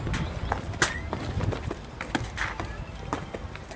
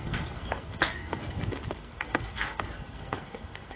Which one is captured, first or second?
first